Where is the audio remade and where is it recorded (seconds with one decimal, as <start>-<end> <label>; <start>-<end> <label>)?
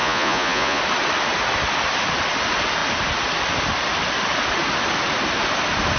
0.0-0.8 remade; 0.8-6.0 recorded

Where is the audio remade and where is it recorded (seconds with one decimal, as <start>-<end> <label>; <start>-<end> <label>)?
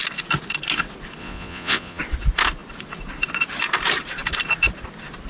0.0-1.2 recorded; 1.2-2.0 remade; 2.0-5.3 recorded